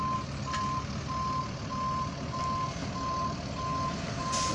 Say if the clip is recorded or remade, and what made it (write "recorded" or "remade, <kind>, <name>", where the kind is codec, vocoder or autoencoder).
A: recorded